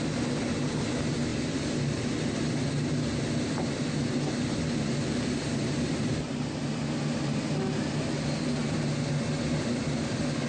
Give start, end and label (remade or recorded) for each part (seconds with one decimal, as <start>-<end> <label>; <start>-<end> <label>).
0.0-10.5 recorded